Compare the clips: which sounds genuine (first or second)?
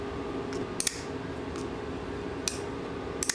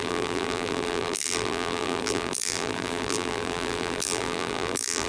first